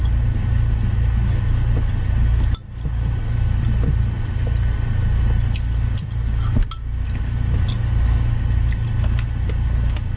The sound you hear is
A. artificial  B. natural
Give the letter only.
B